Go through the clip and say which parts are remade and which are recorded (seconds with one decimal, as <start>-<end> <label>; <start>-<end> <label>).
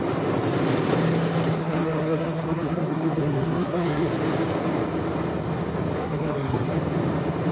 0.0-1.6 recorded; 1.6-4.1 remade; 4.1-6.0 recorded; 6.0-6.7 remade; 6.7-7.5 recorded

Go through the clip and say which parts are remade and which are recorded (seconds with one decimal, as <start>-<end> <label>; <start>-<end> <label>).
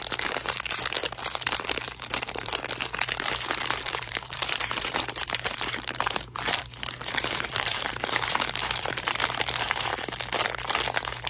0.0-9.9 remade; 9.9-11.3 recorded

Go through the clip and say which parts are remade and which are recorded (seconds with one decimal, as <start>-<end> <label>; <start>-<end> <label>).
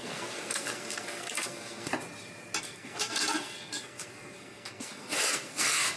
0.0-1.9 remade; 1.9-2.6 recorded; 2.6-6.0 remade